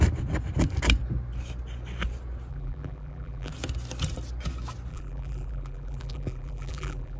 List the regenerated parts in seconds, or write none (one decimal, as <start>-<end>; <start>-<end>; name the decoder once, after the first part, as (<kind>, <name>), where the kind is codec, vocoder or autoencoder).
2.5-3.5 (vocoder, BigVGAN v2); 4.9-7.2